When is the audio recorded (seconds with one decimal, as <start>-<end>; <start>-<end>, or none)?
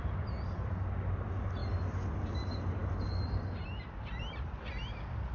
0.0-5.3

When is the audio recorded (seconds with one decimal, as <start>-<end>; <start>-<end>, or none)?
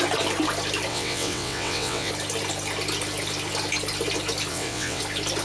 0.0-0.9; 2.1-4.5; 5.0-5.4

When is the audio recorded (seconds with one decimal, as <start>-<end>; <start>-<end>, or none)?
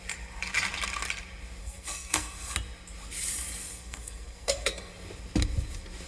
0.0-1.6; 2.5-3.6; 4.9-6.1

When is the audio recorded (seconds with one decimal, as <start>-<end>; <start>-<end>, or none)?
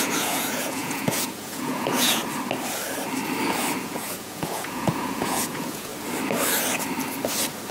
2.2-3.8; 5.9-7.7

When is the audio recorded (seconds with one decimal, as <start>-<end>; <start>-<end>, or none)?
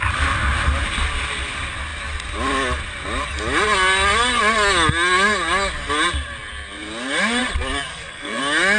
0.0-7.9; 8.4-8.8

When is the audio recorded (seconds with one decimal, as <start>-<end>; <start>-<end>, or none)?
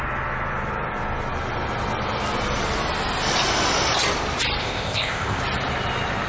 0.0-4.6; 5.4-6.3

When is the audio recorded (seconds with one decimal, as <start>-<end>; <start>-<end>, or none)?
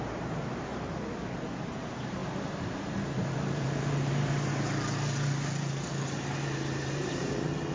0.7-1.6; 4.5-6.4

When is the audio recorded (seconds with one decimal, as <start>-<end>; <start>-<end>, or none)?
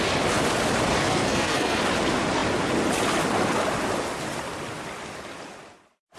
0.0-1.0; 1.8-6.2